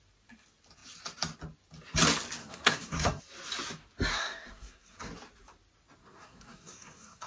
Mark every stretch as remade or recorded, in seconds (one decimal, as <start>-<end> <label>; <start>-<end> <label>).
0.0-2.4 recorded; 2.4-3.2 remade; 3.2-4.1 recorded; 4.1-5.1 remade; 5.1-6.0 recorded; 6.0-7.3 remade